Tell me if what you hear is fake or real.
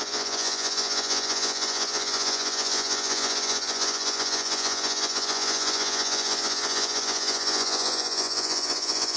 fake